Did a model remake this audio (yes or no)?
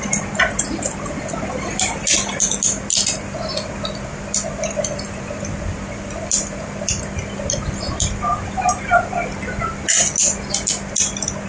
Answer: no